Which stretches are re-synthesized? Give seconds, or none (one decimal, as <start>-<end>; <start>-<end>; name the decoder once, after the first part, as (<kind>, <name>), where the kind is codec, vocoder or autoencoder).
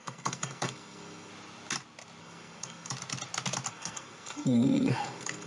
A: 0.0-1.3 (codec, SNAC); 2.2-2.9; 3.7-5.5